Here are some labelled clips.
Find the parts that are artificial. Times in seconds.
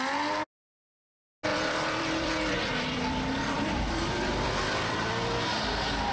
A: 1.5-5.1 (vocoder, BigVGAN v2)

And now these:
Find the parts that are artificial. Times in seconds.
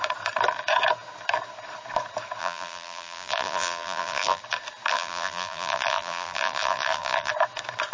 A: 2.4-4.4 (vocoder, BigVGAN v2); 4.9-7.3